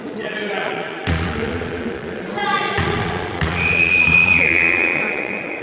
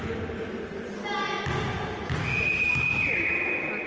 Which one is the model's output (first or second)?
first